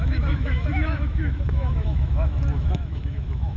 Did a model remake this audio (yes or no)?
yes